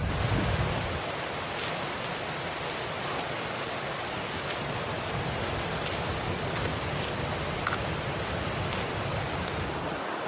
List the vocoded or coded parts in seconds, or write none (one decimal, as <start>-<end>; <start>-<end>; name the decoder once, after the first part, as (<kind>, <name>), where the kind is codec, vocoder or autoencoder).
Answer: none

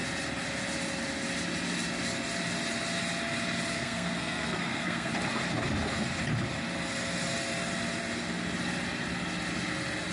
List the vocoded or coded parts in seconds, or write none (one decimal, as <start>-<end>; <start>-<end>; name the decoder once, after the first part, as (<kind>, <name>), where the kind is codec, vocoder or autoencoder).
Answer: 3.7-5.1 (codec, SNAC)

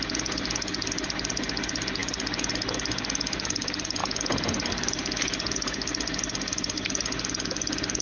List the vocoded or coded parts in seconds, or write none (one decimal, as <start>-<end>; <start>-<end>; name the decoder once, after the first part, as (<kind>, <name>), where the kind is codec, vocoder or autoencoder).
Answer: none

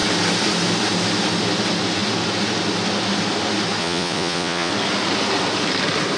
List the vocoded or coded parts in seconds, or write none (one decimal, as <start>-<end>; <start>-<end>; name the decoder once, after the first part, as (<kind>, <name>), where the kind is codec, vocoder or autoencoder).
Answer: 3.8-4.7 (vocoder, Vocos)

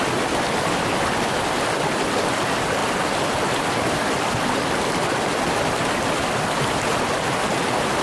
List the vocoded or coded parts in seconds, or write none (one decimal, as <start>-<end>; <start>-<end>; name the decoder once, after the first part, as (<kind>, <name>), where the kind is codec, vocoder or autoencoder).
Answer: none

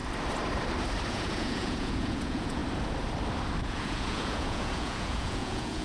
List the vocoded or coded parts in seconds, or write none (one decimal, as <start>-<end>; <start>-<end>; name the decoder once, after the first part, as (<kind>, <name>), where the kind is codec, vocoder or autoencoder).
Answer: 1.1-2.6 (vocoder, Vocos); 3.6-5.8

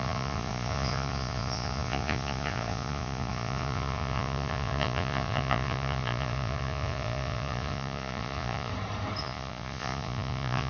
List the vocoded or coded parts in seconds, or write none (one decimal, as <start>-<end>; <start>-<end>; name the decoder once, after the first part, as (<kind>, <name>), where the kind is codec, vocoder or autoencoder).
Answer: 0.0-8.7 (vocoder, Vocos); 9.2-10.7

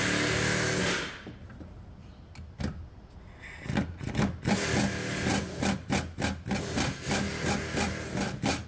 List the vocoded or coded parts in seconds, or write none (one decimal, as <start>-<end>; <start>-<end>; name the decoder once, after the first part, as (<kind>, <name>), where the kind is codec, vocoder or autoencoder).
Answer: none